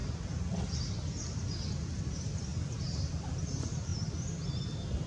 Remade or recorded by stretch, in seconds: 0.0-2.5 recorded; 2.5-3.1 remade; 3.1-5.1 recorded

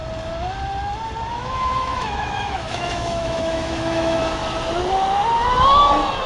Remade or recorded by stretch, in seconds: 0.0-1.3 recorded; 1.3-4.4 remade; 4.4-6.3 recorded

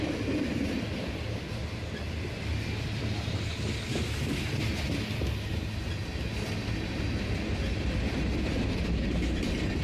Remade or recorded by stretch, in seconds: 0.0-9.8 recorded

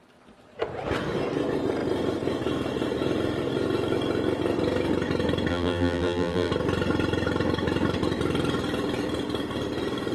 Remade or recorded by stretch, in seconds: 0.0-5.5 recorded; 5.5-6.5 remade; 6.5-10.1 recorded

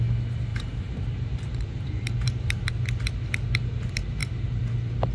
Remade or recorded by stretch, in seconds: 0.0-0.5 recorded; 0.5-2.7 remade; 2.7-5.1 recorded

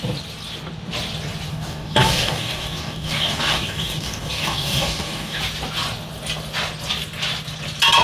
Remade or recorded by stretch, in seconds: 0.0-1.5 recorded; 1.5-5.4 remade; 5.4-8.0 recorded

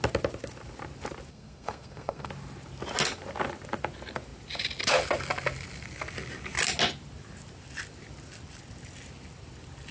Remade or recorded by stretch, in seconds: 0.0-1.3 recorded; 1.3-2.3 remade; 2.3-9.9 recorded

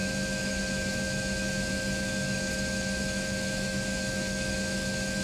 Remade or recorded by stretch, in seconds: 0.0-5.2 remade